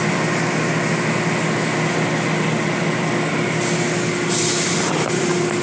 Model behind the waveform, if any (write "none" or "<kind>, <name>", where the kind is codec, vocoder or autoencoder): none